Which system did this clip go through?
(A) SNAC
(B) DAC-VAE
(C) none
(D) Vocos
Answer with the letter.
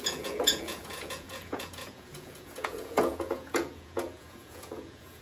D